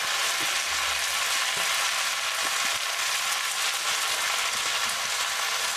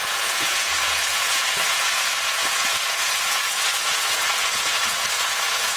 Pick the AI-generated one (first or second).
second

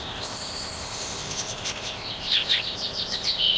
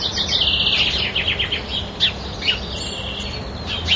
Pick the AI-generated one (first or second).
first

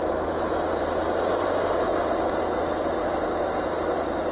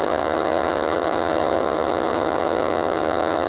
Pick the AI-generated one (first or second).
second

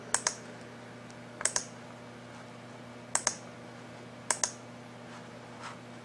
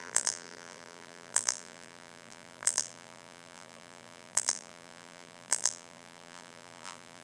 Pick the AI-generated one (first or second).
second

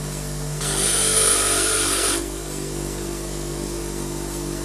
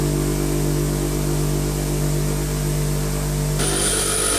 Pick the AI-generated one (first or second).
first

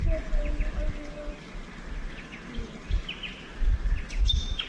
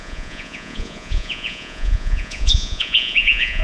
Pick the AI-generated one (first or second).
second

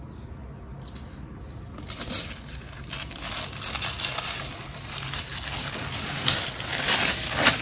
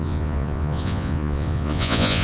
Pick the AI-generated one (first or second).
second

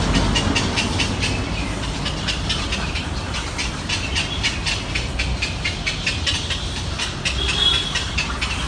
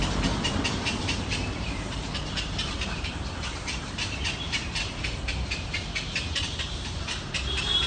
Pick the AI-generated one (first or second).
second